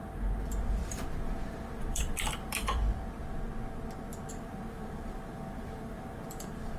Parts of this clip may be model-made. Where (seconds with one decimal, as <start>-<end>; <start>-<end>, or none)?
0.0-2.8; 4.3-6.8